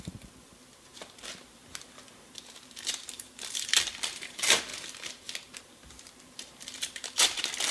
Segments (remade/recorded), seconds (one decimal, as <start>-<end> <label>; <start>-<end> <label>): 0.0-0.9 remade; 0.9-1.7 recorded; 1.7-4.7 remade; 4.7-5.6 recorded; 5.6-7.7 remade